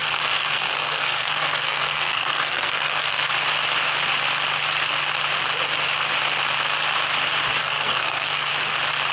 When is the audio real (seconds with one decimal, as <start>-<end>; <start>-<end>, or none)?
3.3-7.6; 8.5-9.1